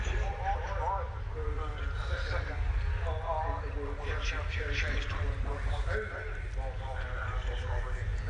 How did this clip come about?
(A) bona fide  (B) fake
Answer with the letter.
A